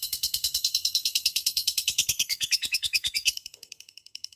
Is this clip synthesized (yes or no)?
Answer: yes